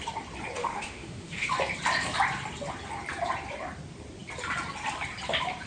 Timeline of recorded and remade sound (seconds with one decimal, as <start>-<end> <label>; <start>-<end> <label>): 0.0-0.6 recorded; 0.6-1.5 remade; 1.5-5.7 recorded